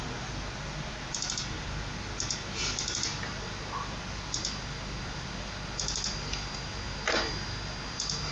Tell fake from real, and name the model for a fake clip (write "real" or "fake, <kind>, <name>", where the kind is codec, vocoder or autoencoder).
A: real